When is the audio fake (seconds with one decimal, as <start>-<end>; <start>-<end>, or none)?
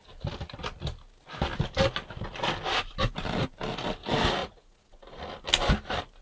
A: 4.4-5.2